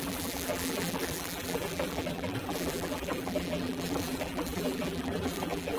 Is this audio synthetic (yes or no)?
yes